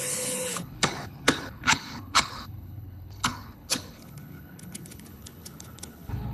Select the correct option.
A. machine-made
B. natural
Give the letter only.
A